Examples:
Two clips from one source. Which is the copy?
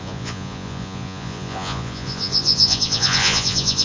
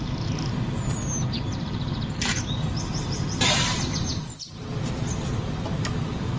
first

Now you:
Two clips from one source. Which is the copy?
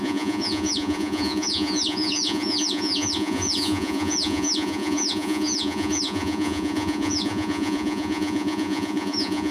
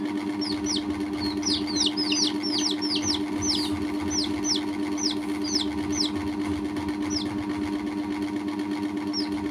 first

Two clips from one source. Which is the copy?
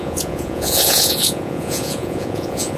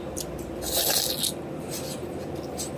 first